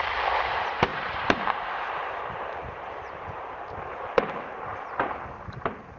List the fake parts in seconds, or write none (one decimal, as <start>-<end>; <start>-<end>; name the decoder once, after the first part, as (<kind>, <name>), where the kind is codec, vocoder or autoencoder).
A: 0.9-4.5 (vocoder, BigVGAN v2)